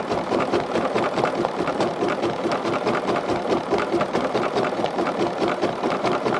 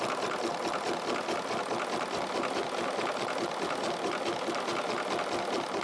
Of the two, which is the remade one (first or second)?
first